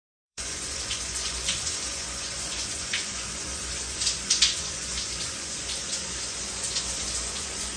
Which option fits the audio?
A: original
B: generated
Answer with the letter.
B